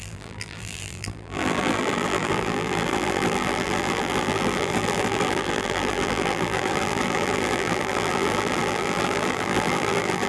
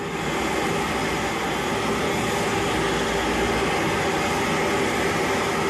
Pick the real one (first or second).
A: second